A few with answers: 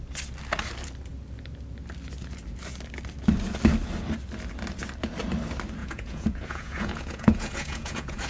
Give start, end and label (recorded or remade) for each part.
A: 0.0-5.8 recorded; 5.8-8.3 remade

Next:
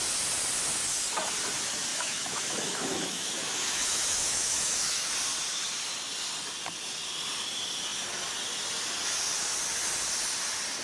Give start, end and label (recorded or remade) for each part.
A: 0.0-1.9 recorded; 1.9-5.1 remade; 5.1-10.8 recorded

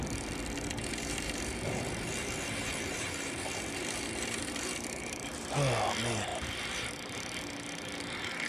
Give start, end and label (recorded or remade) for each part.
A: 0.0-0.8 recorded; 0.8-5.5 remade; 5.5-6.3 recorded; 6.3-7.3 remade; 7.3-8.5 recorded

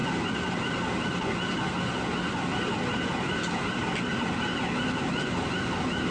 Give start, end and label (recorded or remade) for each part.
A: 0.0-6.1 recorded